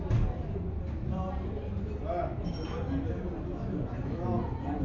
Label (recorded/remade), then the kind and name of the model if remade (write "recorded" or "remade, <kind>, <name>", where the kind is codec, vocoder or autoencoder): recorded